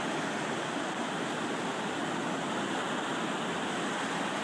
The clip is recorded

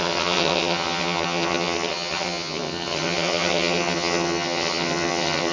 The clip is remade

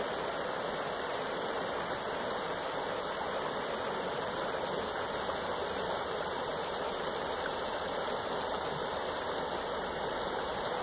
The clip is recorded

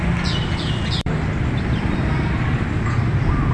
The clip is remade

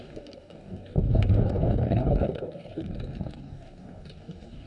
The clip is remade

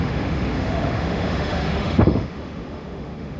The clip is remade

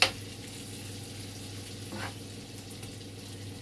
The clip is recorded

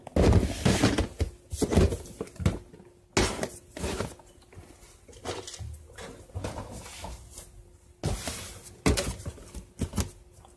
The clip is recorded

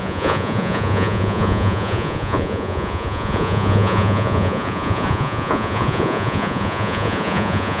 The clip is remade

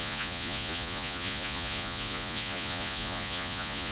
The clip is remade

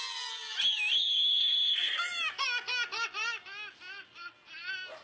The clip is recorded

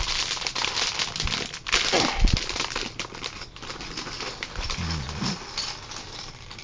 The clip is recorded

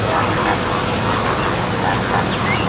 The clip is recorded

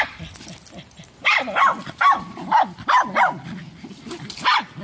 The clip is recorded